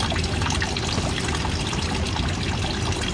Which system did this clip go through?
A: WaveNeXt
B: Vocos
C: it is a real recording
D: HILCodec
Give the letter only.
C